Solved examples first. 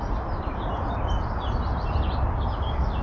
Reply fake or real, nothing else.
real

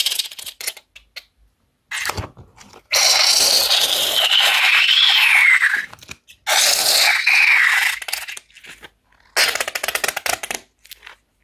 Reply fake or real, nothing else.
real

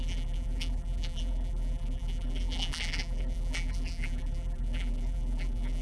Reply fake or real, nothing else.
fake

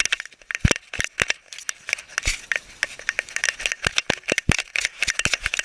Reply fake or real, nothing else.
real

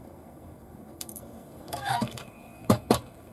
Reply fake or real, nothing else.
fake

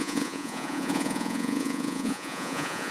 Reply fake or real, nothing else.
fake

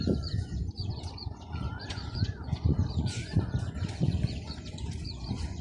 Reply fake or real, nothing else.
fake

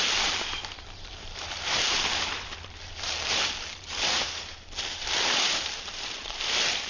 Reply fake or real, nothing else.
fake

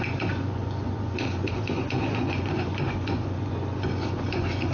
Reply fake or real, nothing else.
fake